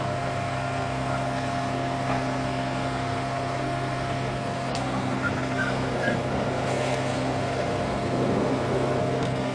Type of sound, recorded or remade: remade